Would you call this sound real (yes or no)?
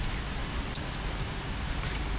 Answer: yes